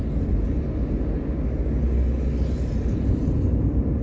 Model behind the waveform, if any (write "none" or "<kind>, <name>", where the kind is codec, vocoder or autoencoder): none